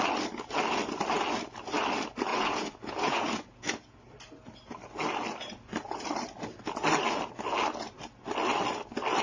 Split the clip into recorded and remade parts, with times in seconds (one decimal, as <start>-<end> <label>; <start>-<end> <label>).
0.0-2.3 recorded; 2.3-4.0 remade; 4.0-9.2 recorded